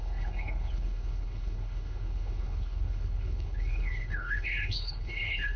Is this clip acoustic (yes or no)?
no